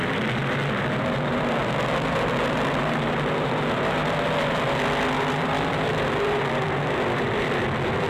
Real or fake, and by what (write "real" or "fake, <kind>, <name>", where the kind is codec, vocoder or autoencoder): fake, vocoder, BigVGAN v2